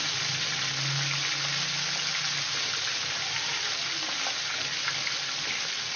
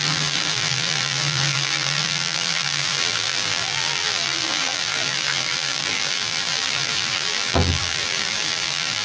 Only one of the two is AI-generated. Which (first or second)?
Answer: second